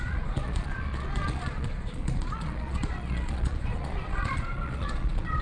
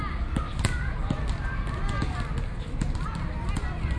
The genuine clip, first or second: second